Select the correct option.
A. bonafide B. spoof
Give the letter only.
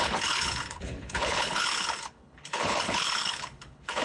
B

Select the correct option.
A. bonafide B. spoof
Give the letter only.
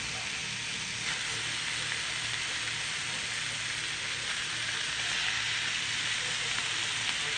A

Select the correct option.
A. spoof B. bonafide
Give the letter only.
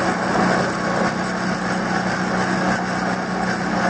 B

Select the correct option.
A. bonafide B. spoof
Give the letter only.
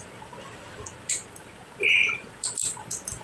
A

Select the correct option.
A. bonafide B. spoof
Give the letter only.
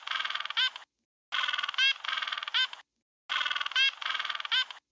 A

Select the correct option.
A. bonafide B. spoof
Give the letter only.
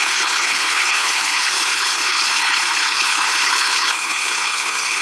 B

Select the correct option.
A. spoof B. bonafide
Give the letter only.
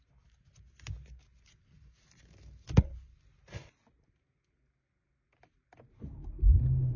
B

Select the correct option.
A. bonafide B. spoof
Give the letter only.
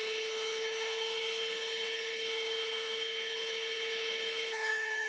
B